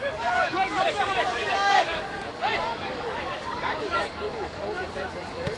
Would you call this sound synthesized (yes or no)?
yes